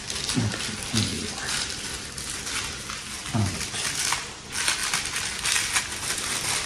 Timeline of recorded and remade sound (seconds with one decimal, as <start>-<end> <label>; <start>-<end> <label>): 0.0-1.1 recorded; 1.1-2.1 remade; 2.1-3.2 recorded; 3.2-4.0 remade; 4.0-6.7 recorded